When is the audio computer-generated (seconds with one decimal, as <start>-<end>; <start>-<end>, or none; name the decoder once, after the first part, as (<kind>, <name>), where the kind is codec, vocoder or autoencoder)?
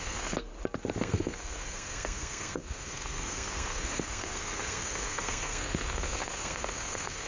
0.0-0.5 (codec, SNAC); 1.0-7.3